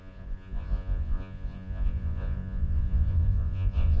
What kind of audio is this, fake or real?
fake